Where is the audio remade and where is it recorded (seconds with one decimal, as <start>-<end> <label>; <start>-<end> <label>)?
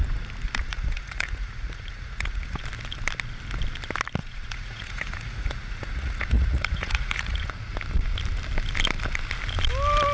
0.0-0.6 recorded; 0.6-2.6 remade; 2.6-4.2 recorded; 4.2-7.5 remade; 7.5-10.1 recorded